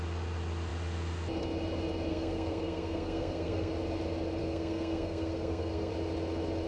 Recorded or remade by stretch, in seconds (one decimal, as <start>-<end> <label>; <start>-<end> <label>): 0.0-2.1 recorded; 2.1-3.7 remade; 3.7-4.4 recorded; 4.4-5.9 remade; 5.9-6.7 recorded